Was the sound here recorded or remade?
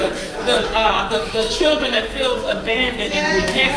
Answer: remade